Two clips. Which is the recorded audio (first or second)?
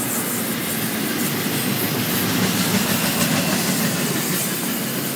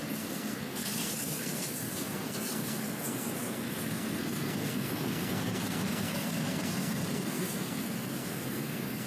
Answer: first